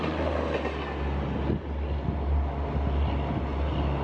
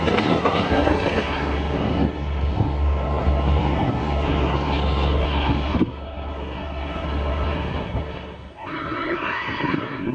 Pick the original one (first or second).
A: first